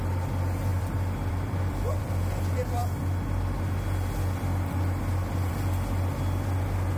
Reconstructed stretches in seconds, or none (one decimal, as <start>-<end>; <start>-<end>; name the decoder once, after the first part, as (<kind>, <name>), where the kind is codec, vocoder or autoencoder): 0.7-2.0 (vocoder, BigVGAN v2)